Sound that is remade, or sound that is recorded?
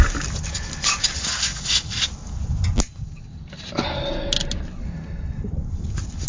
recorded